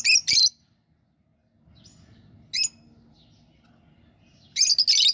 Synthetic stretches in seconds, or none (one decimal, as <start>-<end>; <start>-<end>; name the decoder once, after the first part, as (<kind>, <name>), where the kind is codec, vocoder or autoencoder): none